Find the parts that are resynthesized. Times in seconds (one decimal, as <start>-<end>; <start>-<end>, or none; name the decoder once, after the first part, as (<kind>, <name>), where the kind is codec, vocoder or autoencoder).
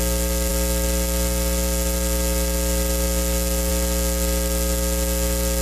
none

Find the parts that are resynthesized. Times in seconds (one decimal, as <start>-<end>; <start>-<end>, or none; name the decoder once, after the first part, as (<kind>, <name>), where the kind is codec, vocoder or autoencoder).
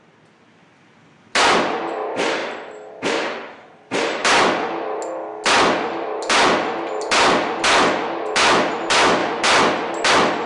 none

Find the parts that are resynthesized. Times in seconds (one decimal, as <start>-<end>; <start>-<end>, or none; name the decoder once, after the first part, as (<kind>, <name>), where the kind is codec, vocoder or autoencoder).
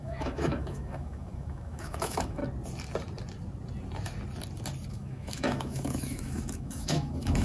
0.0-2.4 (autoencoder, DAC-VAE); 4.9-7.4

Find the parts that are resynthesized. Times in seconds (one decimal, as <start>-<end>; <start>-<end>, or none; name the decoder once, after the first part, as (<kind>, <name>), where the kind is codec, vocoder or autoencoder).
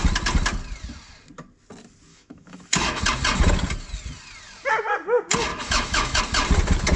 2.1-3.0 (autoencoder, DAC-VAE); 5.5-6.2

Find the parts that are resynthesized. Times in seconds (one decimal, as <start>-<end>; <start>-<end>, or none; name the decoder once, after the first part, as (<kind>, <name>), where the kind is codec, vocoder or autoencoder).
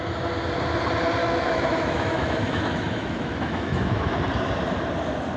1.2-4.1 (autoencoder, DAC-VAE)